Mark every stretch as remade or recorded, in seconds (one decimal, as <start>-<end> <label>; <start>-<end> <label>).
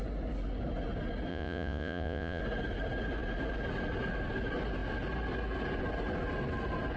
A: 0.0-1.3 recorded; 1.3-2.4 remade; 2.4-7.0 recorded